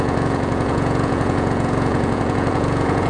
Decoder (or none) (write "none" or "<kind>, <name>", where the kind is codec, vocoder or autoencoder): vocoder, Vocos